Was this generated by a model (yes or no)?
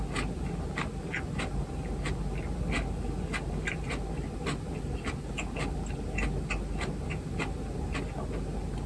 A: no